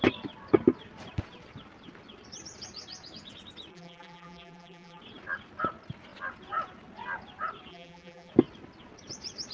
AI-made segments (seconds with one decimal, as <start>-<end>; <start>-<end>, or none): 3.7-5.0; 7.7-8.3